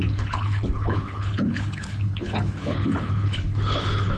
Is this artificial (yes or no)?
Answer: yes